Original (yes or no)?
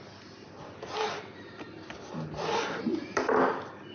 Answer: yes